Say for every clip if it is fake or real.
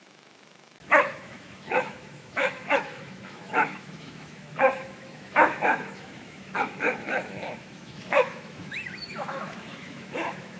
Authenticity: fake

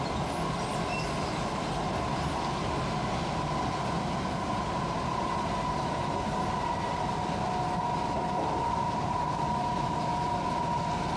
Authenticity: real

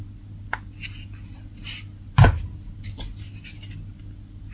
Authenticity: real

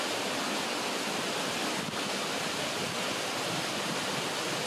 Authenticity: real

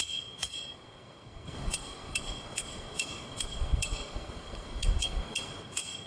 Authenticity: fake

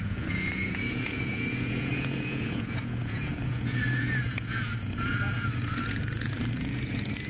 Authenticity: fake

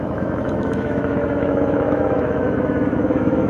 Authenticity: fake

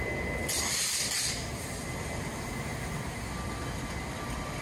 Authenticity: real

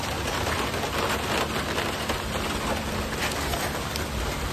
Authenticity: real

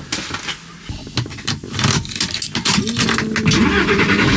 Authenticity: real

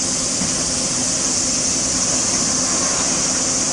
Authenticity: real